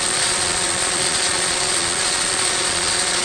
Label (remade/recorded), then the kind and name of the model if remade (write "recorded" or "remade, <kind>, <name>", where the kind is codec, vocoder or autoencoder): remade, vocoder, Vocos